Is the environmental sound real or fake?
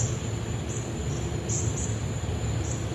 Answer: real